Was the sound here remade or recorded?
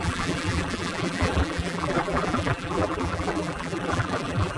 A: remade